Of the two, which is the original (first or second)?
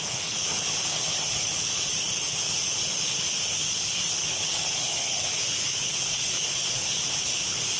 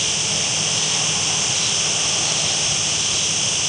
second